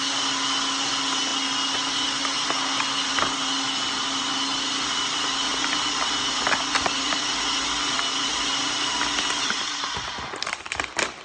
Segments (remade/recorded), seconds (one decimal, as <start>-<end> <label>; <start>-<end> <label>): 0.0-11.2 recorded